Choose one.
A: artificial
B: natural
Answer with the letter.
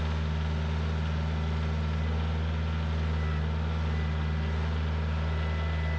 B